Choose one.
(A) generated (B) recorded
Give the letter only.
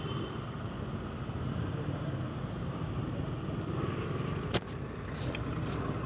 B